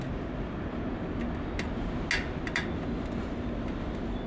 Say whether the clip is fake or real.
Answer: real